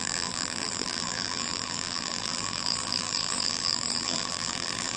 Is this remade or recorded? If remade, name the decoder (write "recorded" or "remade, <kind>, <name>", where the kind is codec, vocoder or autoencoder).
remade, vocoder, BigVGAN v2